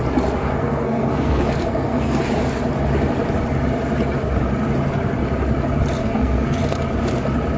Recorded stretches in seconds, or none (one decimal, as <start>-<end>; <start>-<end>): 0.0-0.4; 2.2-6.0; 6.6-7.6